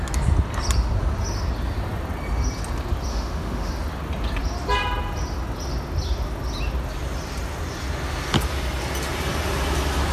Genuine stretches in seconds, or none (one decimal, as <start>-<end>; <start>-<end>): 0.0-3.1; 3.7-10.1